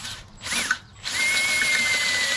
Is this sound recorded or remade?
recorded